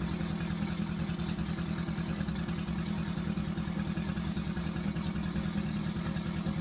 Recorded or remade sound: recorded